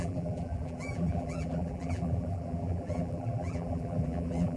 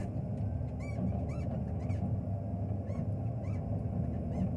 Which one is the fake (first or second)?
first